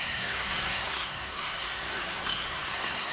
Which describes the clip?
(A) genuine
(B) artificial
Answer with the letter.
B